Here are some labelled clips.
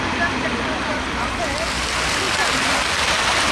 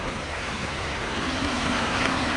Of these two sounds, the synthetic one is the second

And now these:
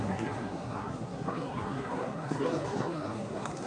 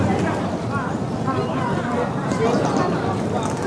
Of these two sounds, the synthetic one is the first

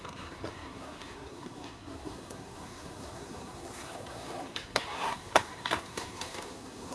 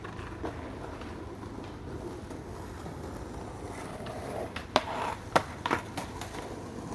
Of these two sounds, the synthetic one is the first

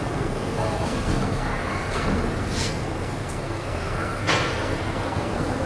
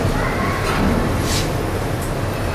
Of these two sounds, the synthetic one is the first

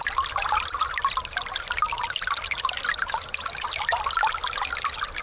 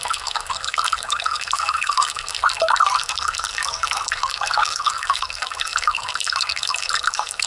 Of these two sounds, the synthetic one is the second